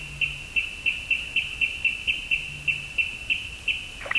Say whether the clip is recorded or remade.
recorded